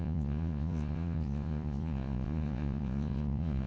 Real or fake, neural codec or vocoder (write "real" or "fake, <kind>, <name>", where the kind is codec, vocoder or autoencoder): fake, vocoder, Vocos